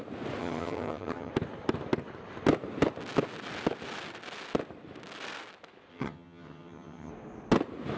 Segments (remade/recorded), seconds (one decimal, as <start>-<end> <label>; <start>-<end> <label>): 0.0-0.4 recorded; 0.4-1.3 remade; 1.3-5.9 recorded; 5.9-7.1 remade; 7.1-8.0 recorded